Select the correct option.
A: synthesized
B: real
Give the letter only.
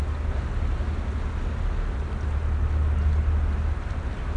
B